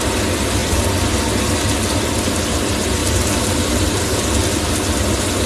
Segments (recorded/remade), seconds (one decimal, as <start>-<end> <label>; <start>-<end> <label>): 0.0-3.0 recorded; 3.0-4.6 remade; 4.6-5.5 recorded